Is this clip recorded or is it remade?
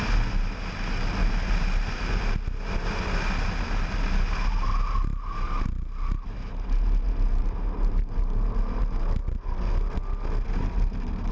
recorded